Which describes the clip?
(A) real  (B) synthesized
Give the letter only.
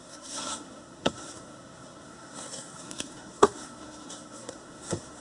B